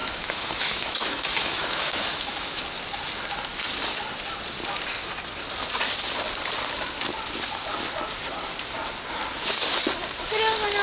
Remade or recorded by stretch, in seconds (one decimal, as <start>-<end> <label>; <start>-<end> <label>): 0.0-2.6 remade; 2.6-10.8 recorded